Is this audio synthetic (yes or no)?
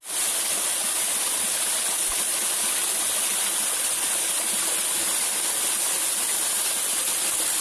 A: no